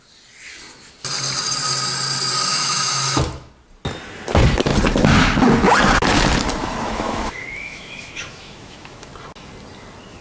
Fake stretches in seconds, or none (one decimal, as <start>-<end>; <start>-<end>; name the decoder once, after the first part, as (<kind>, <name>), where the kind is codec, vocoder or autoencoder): 2.5-3.5 (autoencoder, DAC-VAE); 6.6-9.1